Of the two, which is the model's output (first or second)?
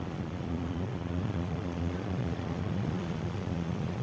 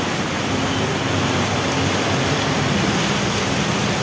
first